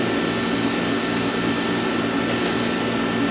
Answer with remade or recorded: recorded